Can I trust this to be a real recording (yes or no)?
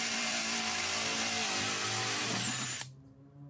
no